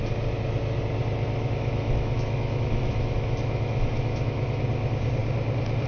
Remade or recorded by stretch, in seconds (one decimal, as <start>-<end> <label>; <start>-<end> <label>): 0.0-1.4 recorded; 1.4-4.6 remade; 4.6-5.9 recorded